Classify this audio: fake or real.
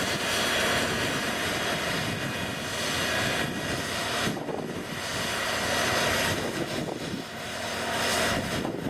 real